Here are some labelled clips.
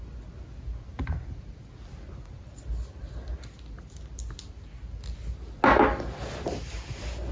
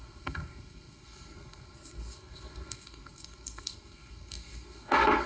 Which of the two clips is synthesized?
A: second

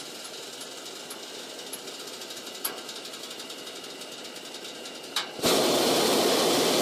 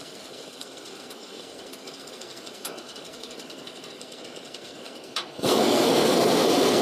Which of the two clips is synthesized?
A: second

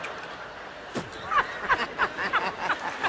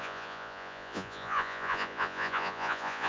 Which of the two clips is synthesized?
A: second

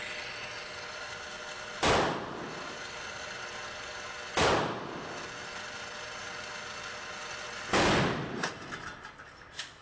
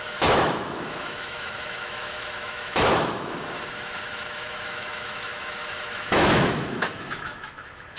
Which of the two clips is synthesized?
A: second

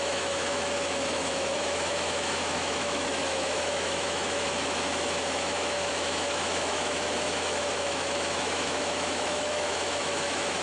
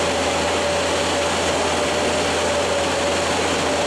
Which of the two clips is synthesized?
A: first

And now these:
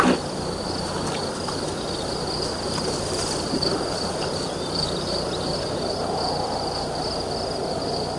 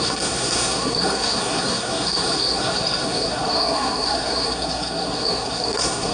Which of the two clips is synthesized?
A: second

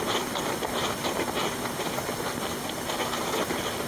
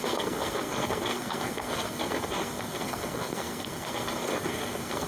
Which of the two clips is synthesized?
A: second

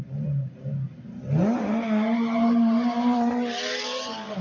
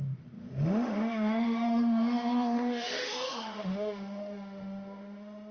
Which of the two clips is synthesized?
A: second